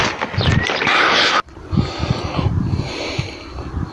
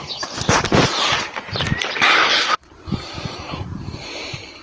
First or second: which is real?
first